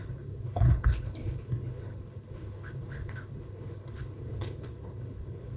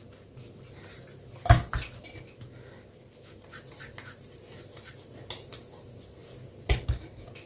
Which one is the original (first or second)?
second